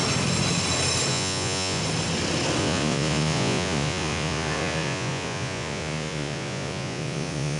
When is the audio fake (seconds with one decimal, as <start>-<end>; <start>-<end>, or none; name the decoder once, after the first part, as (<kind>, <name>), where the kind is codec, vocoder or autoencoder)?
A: 1.1-1.8 (vocoder, Vocos); 2.6-7.6